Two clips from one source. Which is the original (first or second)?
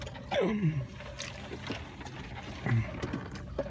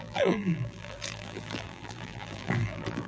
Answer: first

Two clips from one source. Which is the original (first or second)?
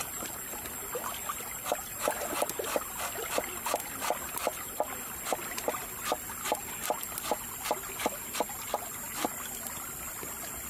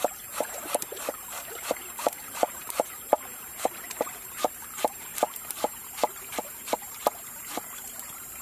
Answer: first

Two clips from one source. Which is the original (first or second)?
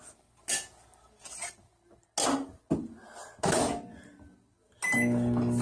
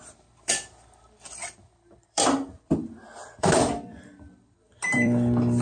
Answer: first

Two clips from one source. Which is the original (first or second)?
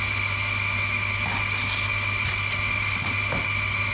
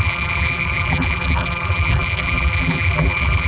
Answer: first